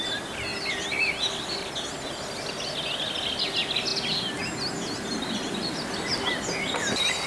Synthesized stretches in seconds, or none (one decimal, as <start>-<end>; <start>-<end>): none